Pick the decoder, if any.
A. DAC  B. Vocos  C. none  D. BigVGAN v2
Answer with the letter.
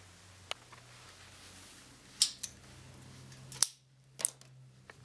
C